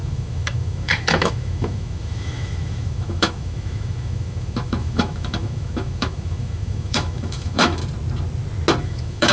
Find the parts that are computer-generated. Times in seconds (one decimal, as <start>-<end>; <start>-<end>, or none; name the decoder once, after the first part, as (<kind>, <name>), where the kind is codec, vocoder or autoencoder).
0.0-7.8 (autoencoder, DAC-VAE); 8.8-9.3